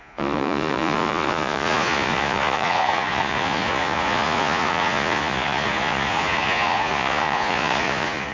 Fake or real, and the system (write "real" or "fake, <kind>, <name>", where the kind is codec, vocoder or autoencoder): fake, vocoder, Vocos